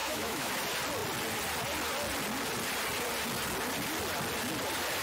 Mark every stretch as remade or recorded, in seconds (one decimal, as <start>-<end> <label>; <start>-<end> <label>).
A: 0.0-0.5 remade; 0.5-5.0 recorded